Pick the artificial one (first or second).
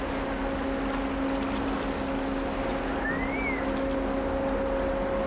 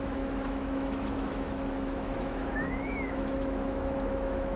second